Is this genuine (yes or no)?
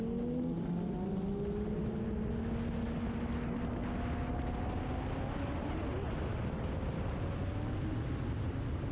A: yes